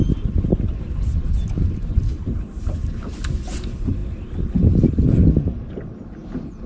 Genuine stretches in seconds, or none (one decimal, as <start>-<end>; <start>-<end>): 0.0-2.1; 2.6-6.7